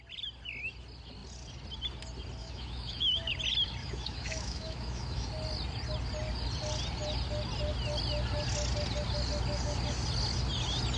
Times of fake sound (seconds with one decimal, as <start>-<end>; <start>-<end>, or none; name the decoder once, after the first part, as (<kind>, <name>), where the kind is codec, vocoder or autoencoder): 2.4-3.3 (autoencoder, DAC-VAE); 3.8-5.3